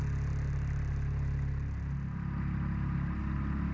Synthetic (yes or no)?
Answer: no